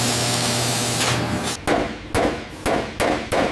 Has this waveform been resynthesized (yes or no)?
no